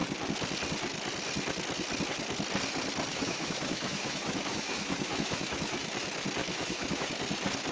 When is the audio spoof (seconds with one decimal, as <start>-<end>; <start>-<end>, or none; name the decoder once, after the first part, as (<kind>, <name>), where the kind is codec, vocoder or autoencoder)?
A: 3.1-5.9 (autoencoder, DAC-VAE); 6.4-7.1